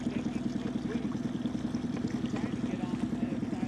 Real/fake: real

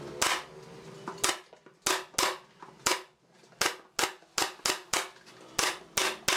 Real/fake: real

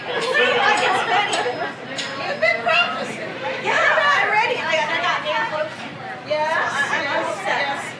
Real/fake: real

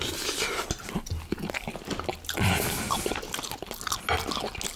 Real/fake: real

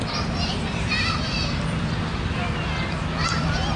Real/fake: fake